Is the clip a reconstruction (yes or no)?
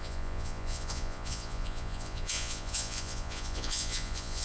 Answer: yes